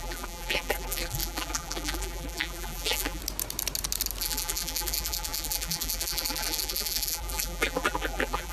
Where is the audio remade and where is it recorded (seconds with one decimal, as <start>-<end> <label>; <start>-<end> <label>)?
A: 0.0-3.2 remade; 3.2-4.2 recorded; 4.2-8.5 remade